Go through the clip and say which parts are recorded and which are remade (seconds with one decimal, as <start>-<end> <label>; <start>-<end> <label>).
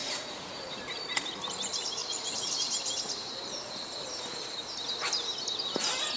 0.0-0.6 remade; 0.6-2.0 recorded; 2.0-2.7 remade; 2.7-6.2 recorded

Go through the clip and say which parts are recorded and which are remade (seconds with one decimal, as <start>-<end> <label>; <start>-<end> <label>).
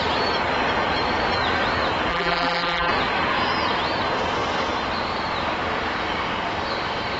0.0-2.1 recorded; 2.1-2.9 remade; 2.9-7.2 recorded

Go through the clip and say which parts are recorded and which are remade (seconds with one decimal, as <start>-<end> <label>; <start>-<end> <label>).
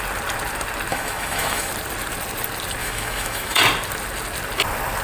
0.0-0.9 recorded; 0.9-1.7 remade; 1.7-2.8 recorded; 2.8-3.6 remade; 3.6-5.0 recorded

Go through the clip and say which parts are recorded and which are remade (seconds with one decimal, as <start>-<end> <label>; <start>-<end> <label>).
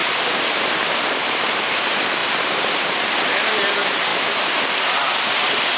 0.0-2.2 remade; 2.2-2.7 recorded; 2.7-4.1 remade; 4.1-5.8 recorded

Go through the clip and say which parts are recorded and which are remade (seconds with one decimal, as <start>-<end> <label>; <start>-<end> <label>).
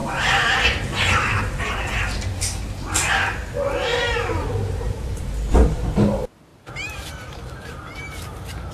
0.0-1.6 remade; 1.6-3.9 recorded; 3.9-5.5 remade; 5.5-6.5 recorded; 6.5-8.7 remade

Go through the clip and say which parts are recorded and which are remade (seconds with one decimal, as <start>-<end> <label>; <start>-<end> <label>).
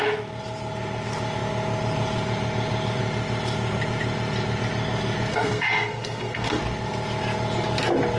0.0-5.3 recorded; 5.3-6.6 remade; 6.6-8.2 recorded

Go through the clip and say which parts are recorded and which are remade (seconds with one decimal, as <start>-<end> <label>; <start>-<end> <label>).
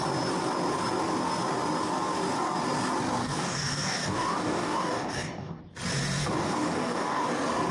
0.0-3.2 recorded; 3.2-5.6 remade; 5.6-6.2 recorded; 6.2-7.3 remade; 7.3-7.7 recorded